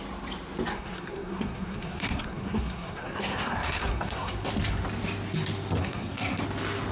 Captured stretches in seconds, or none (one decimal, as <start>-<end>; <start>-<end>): 0.0-0.7; 4.5-5.8; 6.4-6.9